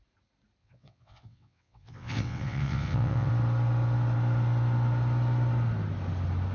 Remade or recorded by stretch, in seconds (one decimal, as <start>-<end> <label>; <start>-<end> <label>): 0.0-0.6 recorded; 0.6-3.3 remade; 3.3-6.5 recorded